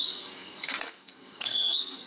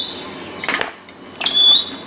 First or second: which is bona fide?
second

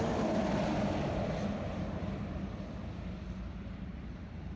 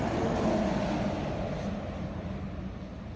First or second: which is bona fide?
second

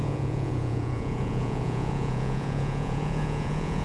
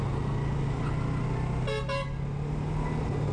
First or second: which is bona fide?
second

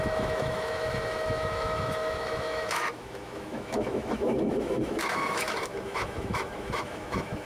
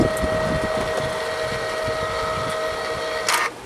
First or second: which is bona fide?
second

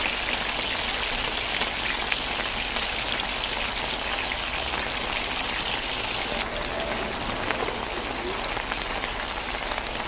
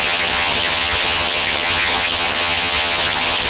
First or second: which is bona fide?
first